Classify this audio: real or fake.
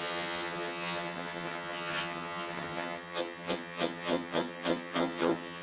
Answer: fake